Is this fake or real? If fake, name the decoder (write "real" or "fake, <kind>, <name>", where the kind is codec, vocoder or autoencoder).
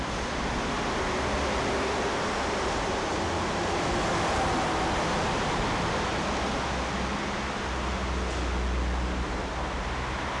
real